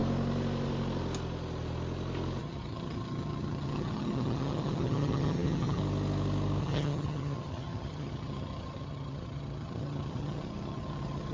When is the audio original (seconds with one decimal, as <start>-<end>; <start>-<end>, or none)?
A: 0.0-2.4; 5.8-6.6